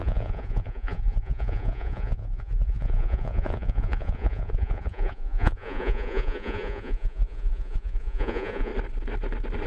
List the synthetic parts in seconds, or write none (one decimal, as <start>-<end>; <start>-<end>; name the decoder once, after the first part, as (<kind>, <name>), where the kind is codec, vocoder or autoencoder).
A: 0.0-8.7 (vocoder, Vocos)